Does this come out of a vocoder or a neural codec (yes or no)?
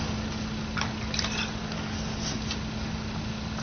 no